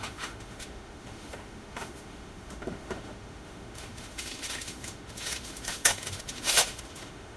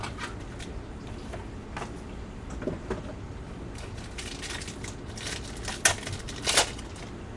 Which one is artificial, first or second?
first